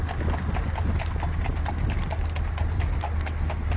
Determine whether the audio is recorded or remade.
recorded